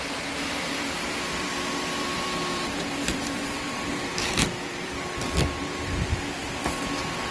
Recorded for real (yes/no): no